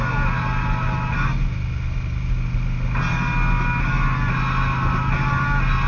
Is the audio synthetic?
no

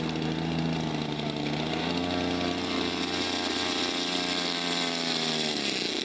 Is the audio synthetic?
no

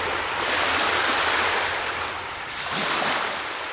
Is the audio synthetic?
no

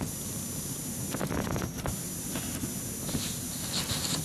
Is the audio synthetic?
no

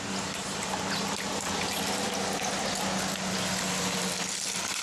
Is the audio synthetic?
no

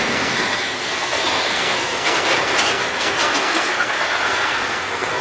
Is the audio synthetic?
yes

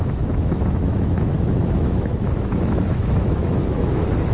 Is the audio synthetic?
yes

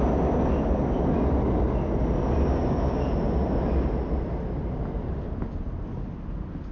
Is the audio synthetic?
no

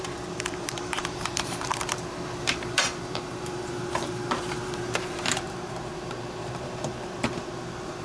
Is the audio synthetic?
yes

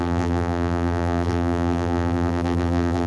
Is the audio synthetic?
yes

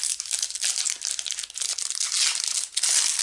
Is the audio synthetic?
no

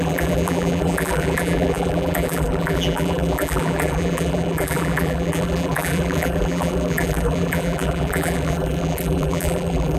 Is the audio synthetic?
yes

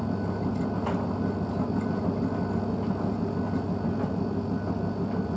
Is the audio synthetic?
no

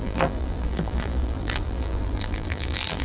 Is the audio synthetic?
yes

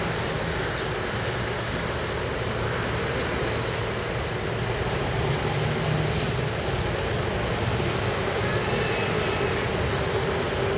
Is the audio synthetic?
no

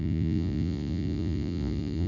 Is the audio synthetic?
yes